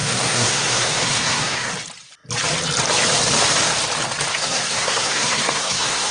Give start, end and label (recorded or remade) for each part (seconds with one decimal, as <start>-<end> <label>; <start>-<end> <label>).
0.0-1.7 remade; 1.7-4.3 recorded; 4.3-6.1 remade